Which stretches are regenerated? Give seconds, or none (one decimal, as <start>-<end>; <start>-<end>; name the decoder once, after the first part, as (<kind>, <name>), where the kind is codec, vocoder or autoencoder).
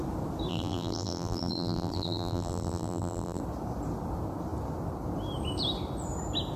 0.5-3.4 (vocoder, BigVGAN v2)